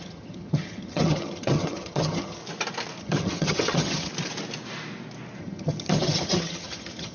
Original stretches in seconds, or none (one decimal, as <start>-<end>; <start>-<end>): 2.4-3.0; 4.1-5.4